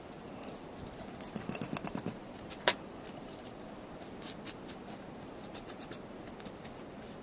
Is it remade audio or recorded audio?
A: recorded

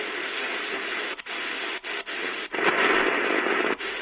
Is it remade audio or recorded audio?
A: recorded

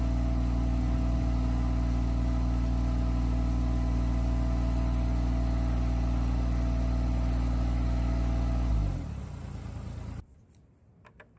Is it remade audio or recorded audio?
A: recorded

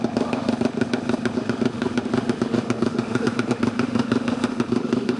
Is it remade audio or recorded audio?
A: remade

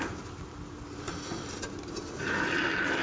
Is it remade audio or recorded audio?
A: recorded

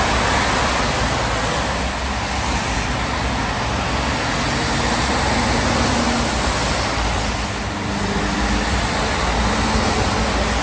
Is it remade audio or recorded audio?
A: recorded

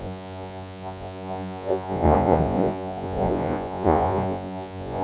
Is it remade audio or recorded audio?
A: remade